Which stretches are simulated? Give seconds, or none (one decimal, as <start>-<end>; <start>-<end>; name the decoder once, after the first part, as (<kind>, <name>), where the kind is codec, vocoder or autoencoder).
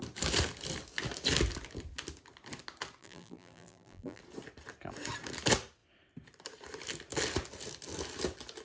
3.0-4.2 (vocoder, BigVGAN v2)